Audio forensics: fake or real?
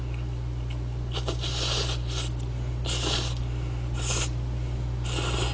real